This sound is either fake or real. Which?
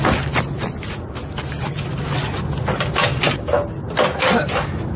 real